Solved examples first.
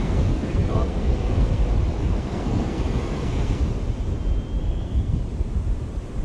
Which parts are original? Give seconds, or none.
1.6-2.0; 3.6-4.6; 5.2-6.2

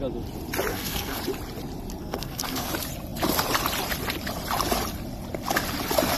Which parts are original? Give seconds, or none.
0.0-0.7; 1.2-2.0; 2.7-6.2

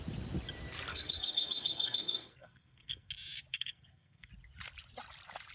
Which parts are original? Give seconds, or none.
0.0-0.9; 3.1-3.5; 4.3-5.5

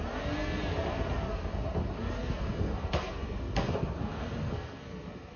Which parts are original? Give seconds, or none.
0.0-2.2